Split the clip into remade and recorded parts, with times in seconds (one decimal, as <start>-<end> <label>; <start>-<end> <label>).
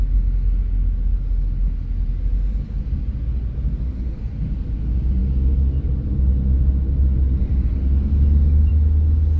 0.0-9.4 recorded